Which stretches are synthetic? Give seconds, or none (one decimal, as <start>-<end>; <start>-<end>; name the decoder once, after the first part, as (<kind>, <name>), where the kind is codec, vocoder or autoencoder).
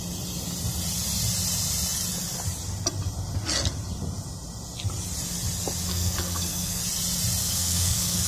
5.9-6.8 (codec, SNAC); 7.4-8.3